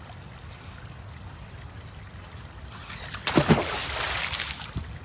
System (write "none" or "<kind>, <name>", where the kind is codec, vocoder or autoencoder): none